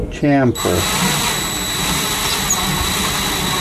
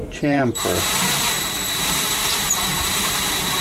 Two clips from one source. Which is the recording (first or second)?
first